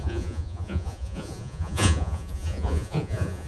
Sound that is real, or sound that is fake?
fake